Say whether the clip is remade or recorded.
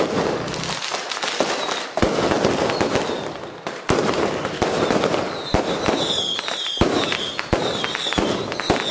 recorded